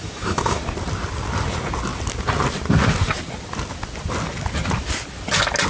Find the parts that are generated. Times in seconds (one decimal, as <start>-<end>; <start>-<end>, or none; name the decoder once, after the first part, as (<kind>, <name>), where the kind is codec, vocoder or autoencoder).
0.0-0.6 (autoencoder, DAC-VAE)